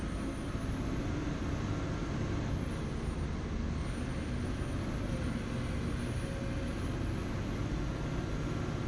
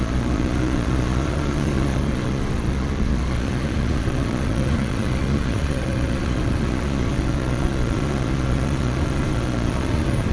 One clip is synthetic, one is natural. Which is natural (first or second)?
first